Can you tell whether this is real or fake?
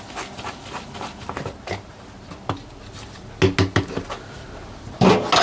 real